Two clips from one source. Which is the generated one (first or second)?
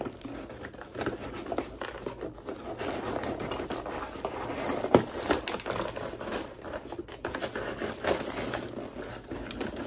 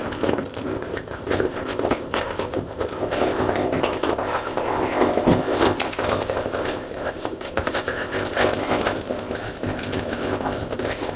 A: second